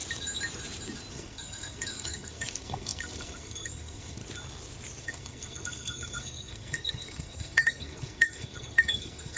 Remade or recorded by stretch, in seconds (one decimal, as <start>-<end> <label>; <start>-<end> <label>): 0.0-1.1 recorded; 1.1-4.2 remade; 4.2-5.0 recorded; 5.0-9.4 remade

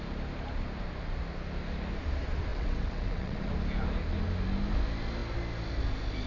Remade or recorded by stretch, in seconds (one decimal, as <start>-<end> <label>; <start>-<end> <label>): 0.0-2.5 recorded; 2.5-3.5 remade; 3.5-6.3 recorded

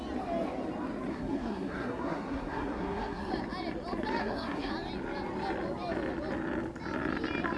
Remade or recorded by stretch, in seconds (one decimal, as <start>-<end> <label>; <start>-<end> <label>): 0.0-1.1 recorded; 1.1-3.3 remade; 3.3-4.2 recorded; 4.2-4.7 remade; 4.7-7.6 recorded

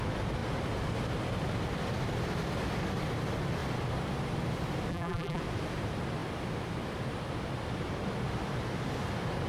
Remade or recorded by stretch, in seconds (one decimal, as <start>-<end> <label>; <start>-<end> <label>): 0.0-4.9 recorded; 4.9-5.4 remade; 5.4-9.5 recorded

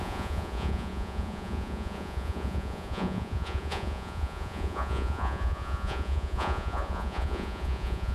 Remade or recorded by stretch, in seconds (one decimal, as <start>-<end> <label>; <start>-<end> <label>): 0.0-8.1 remade

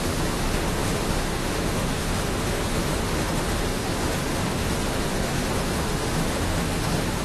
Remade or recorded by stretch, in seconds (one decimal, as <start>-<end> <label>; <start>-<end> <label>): 0.0-7.2 remade

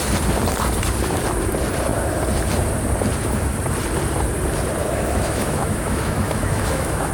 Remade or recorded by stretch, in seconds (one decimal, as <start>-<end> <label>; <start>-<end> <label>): 0.0-4.8 recorded; 4.8-7.1 remade